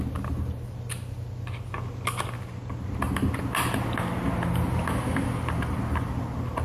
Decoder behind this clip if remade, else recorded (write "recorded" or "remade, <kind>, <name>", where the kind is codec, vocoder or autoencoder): remade, vocoder, BigVGAN v2